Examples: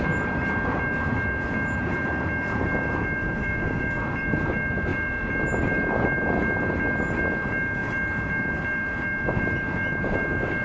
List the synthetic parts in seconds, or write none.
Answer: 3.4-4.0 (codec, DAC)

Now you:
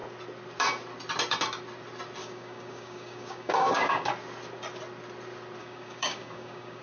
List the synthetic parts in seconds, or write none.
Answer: 2.2-4.1 (codec, DAC); 5.6-6.8

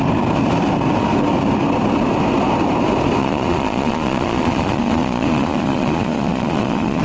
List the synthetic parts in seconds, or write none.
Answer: 3.2-7.0 (vocoder, Vocos)

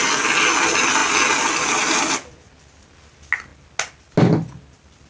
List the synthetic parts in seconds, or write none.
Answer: none